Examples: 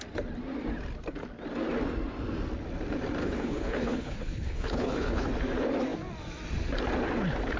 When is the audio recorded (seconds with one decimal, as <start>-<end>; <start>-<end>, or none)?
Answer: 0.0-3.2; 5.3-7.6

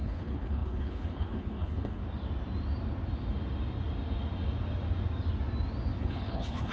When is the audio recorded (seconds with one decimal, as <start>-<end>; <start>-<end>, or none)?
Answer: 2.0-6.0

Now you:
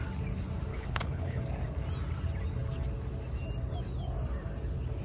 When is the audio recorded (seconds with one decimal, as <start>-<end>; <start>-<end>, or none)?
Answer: 0.0-0.7; 1.4-5.0